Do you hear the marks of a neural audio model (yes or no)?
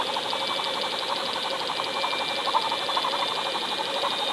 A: no